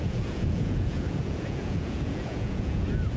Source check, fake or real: fake